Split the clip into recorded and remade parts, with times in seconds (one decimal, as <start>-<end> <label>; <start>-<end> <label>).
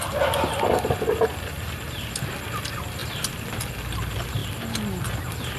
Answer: 0.0-5.6 recorded